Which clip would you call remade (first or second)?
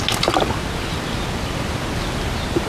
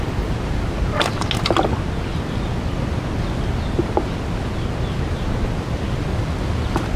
first